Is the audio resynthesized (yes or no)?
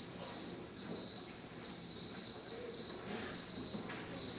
no